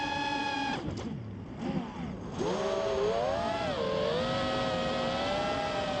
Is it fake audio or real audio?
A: real